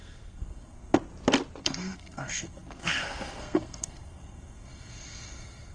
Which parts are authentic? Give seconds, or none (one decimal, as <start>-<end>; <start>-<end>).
0.9-1.6